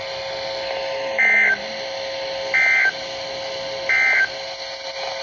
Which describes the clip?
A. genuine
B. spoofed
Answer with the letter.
A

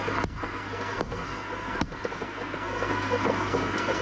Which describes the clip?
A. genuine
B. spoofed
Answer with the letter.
B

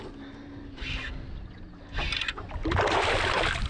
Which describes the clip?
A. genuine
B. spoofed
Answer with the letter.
A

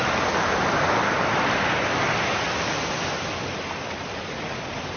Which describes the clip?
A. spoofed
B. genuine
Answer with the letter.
B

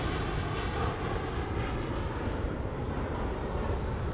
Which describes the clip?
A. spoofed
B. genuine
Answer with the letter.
B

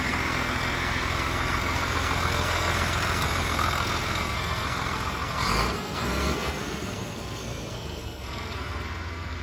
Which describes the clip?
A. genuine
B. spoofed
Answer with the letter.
B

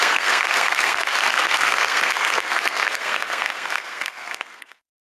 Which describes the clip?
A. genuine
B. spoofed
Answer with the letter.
B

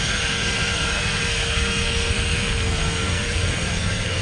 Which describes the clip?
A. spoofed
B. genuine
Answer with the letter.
A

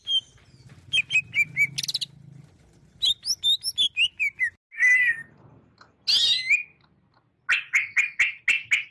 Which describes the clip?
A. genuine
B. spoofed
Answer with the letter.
A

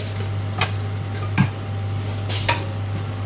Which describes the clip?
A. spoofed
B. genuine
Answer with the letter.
B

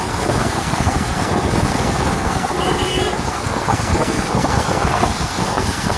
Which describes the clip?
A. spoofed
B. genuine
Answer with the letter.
A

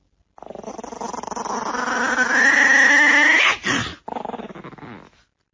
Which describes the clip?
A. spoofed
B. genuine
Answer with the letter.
B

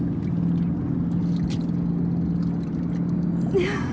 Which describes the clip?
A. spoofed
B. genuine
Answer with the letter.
B